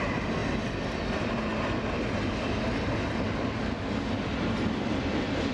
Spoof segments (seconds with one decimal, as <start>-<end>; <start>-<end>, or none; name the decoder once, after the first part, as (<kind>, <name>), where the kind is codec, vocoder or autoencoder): 0.0-0.4 (vocoder, BigVGAN v2); 1.1-1.5; 4.8-5.5